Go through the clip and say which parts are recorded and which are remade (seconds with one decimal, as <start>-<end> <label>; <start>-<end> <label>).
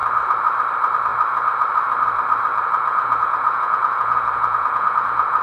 0.0-2.5 recorded; 2.5-5.4 remade